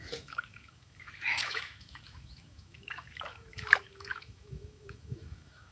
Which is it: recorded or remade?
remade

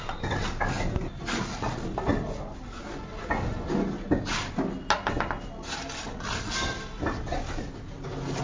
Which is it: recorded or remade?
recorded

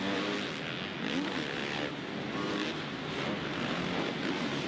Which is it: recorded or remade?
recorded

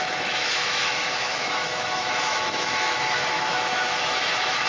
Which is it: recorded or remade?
remade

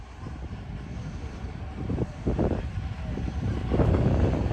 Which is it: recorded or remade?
recorded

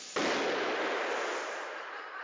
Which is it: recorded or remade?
recorded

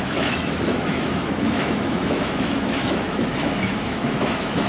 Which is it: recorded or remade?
remade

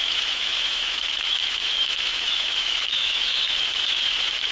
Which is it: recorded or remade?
remade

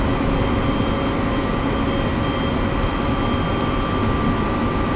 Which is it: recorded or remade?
recorded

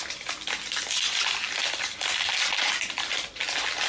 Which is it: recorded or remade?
recorded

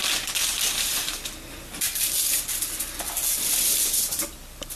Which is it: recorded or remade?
recorded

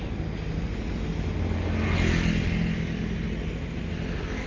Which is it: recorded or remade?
recorded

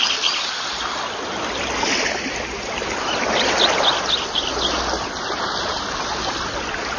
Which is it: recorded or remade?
recorded